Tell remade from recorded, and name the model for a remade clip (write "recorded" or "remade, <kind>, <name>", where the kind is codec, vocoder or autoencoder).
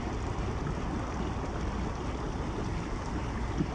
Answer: recorded